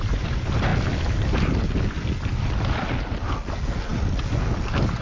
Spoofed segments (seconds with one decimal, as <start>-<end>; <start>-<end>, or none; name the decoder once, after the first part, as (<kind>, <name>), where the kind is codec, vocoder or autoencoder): none